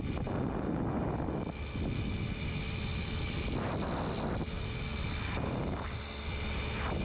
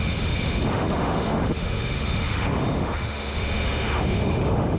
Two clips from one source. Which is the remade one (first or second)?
second